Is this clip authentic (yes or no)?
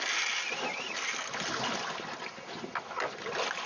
yes